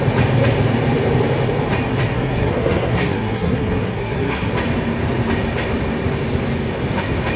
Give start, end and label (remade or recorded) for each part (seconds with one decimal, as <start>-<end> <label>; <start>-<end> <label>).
0.0-2.1 recorded; 2.1-4.5 remade; 4.5-7.4 recorded